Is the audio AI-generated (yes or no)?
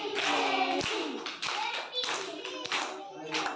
no